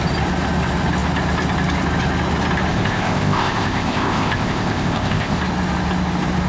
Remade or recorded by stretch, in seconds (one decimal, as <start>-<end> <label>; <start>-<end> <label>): 0.0-2.7 recorded; 2.7-5.4 remade; 5.4-6.5 recorded